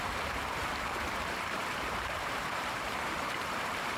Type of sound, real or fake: fake